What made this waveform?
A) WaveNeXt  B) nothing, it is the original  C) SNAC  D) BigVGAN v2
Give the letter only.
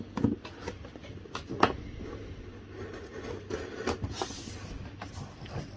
B